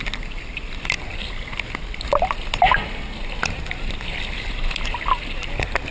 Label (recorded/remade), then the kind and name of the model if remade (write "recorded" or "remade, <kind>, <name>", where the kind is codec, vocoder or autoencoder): recorded